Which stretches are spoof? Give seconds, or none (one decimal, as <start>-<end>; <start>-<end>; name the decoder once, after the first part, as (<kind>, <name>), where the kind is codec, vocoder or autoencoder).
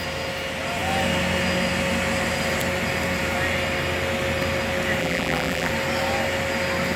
5.0-5.7 (vocoder, BigVGAN v2)